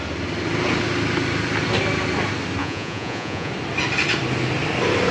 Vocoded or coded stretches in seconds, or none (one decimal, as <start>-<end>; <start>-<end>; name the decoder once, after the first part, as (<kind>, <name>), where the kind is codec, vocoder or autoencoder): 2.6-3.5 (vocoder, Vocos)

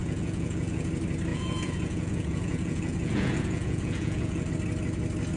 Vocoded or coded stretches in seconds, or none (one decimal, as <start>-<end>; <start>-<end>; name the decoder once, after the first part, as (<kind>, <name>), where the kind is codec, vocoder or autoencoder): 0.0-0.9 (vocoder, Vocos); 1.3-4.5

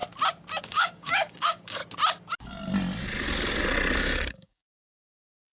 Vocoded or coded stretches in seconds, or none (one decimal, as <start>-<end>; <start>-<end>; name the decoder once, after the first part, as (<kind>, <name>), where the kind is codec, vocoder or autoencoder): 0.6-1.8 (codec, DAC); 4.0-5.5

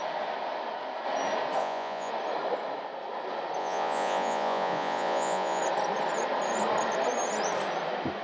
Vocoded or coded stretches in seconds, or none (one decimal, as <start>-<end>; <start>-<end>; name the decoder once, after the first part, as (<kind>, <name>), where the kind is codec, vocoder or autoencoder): 1.6-2.1 (vocoder, Vocos); 3.6-5.6